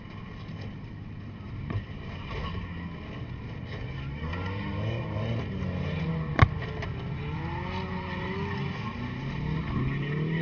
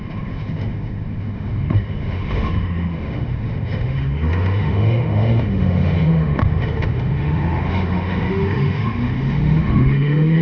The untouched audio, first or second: first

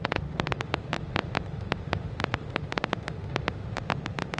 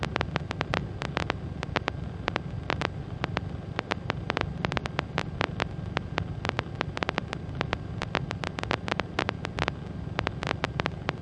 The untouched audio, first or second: second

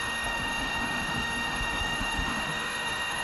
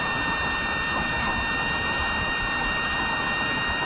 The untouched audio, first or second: second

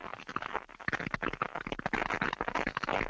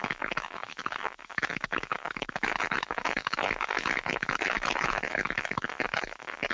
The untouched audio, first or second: first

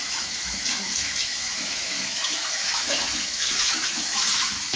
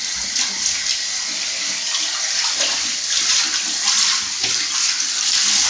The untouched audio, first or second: second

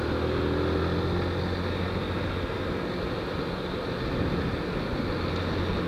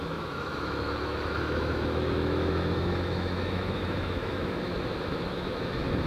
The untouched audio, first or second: first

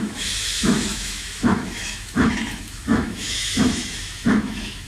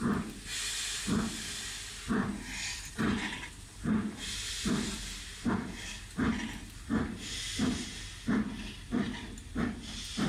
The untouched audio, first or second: second